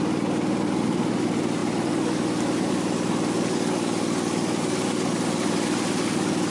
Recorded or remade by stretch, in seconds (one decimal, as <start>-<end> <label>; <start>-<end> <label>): 0.0-6.5 recorded

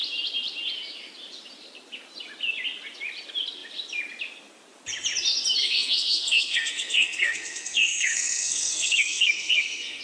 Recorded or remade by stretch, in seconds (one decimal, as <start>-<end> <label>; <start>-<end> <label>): 0.0-5.6 recorded; 5.6-10.0 remade